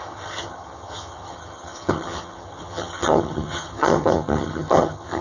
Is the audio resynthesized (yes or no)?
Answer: yes